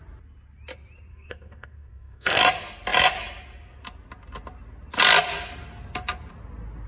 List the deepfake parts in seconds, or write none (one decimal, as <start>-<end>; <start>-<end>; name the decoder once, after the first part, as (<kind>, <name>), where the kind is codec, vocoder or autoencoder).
1.1-2.4 (codec, SNAC)